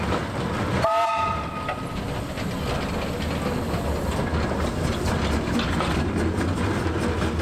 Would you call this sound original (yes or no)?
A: yes